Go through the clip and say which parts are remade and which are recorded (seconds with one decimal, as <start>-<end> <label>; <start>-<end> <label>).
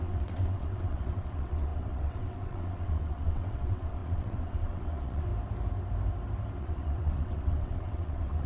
0.0-5.3 remade; 5.3-6.6 recorded; 6.6-8.5 remade